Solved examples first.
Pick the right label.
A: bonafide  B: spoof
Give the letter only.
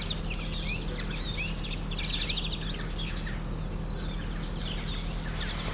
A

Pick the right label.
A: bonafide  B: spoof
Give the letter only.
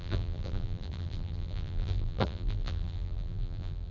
B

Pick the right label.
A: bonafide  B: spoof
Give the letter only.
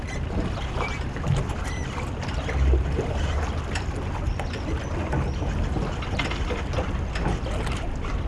A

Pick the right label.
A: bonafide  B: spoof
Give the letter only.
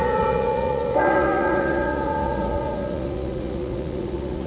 B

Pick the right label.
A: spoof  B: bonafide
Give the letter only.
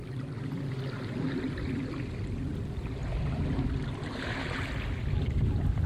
B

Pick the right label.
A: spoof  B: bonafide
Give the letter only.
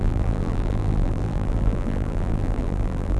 A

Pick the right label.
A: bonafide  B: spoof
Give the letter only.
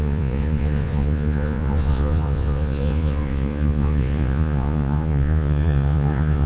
B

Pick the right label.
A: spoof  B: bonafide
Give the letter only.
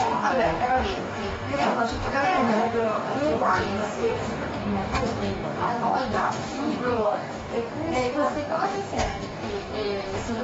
A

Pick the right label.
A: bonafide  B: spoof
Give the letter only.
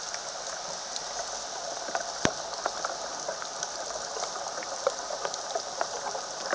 A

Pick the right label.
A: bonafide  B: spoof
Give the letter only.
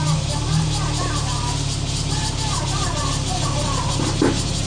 A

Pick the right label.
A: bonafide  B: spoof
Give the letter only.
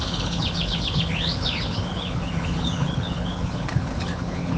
B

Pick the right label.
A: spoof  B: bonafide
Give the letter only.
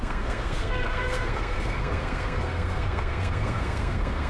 A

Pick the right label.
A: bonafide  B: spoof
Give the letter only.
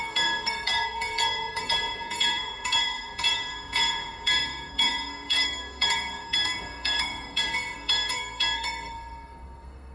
B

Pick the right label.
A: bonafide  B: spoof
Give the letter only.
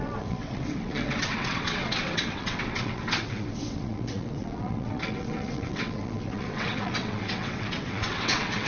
B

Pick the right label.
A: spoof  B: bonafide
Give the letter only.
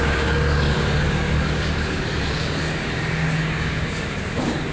A